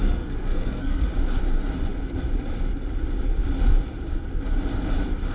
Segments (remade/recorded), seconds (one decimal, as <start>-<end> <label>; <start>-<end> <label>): 0.0-1.1 remade; 1.1-5.3 recorded